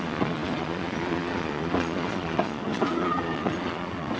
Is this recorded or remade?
remade